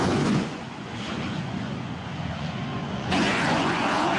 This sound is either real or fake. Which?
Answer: fake